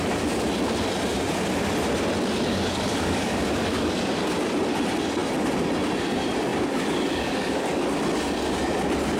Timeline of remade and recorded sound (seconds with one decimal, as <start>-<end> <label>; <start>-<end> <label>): 0.0-2.5 recorded; 2.5-4.2 remade; 4.2-6.5 recorded; 6.5-8.0 remade; 8.0-9.2 recorded